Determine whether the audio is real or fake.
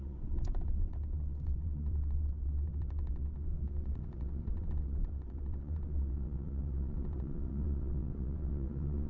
fake